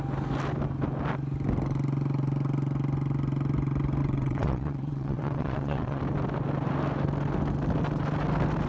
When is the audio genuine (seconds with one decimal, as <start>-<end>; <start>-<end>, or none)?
0.0-4.0; 6.0-8.7